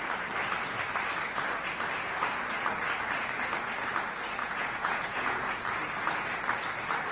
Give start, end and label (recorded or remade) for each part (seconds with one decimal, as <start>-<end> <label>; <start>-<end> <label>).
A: 0.0-4.4 recorded; 4.4-5.6 remade; 5.6-7.1 recorded